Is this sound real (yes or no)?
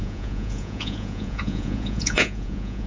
no